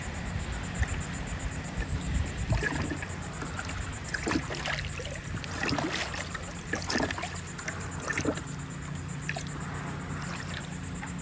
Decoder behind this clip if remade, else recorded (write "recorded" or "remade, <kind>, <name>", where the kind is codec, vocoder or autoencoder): recorded